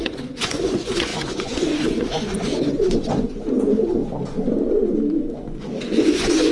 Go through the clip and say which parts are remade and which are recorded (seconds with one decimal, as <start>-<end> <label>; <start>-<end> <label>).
0.0-4.0 remade; 4.0-5.3 recorded; 5.3-6.5 remade